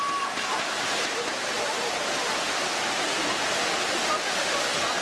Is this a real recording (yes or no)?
yes